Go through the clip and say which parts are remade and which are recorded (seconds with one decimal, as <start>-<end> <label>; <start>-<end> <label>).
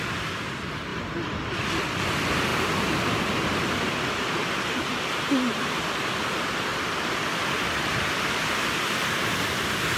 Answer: 0.0-0.9 recorded; 0.9-2.1 remade; 2.1-2.5 recorded; 2.5-6.2 remade; 6.2-6.7 recorded; 6.7-10.0 remade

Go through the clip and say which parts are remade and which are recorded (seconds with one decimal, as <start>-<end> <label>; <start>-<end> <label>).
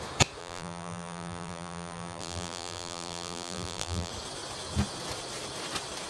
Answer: 0.0-0.4 recorded; 0.4-4.1 remade; 4.1-6.1 recorded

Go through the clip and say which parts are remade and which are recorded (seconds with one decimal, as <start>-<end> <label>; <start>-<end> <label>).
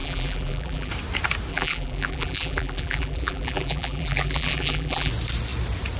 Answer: 0.0-0.9 remade; 0.9-1.5 recorded; 1.5-5.1 remade; 5.1-6.0 recorded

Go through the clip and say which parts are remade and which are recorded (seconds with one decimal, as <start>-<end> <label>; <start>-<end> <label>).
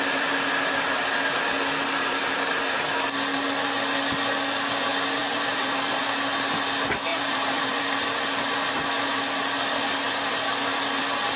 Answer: 0.0-5.2 recorded; 5.2-6.0 remade; 6.0-7.1 recorded; 7.1-7.8 remade; 7.8-11.4 recorded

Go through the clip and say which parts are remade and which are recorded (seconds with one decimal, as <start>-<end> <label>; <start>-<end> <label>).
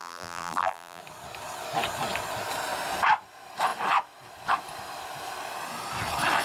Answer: 0.0-1.0 remade; 1.0-6.4 recorded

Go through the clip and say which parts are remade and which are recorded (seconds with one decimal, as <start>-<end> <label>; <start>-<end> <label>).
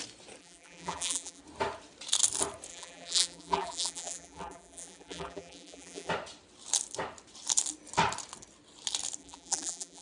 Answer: 0.0-0.4 recorded; 0.4-1.4 remade; 1.4-2.7 recorded; 2.7-6.1 remade; 6.1-9.2 recorded; 9.2-10.0 remade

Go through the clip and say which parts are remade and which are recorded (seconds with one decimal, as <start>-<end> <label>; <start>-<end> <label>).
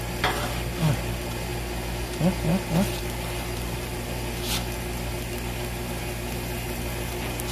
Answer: 0.0-7.5 recorded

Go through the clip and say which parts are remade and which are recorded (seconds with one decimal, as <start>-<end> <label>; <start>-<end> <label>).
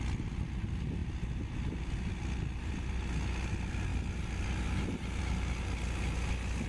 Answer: 0.0-6.7 recorded